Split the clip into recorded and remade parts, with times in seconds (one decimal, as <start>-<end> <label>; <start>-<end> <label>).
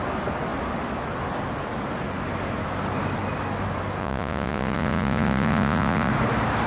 0.0-4.0 recorded; 4.0-6.1 remade; 6.1-6.7 recorded